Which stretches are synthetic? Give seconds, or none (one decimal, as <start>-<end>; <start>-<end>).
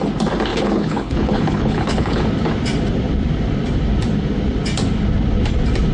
0.5-2.2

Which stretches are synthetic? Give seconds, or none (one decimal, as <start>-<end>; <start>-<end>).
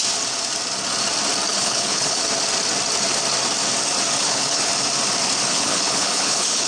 1.5-2.2; 4.2-4.7; 5.5-6.7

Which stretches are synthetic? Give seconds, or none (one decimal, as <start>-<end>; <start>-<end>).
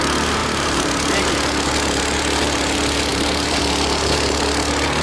0.4-1.3; 3.1-3.6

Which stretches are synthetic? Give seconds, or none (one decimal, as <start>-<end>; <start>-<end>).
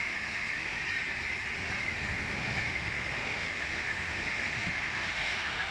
0.0-0.8; 1.8-5.7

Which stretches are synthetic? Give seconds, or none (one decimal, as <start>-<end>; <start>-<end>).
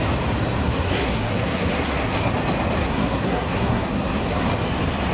0.6-2.3; 2.8-4.5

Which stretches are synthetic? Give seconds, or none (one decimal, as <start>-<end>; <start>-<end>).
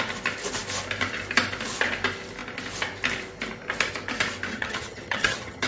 4.5-5.7